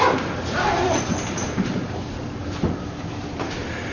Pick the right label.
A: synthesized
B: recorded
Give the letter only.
B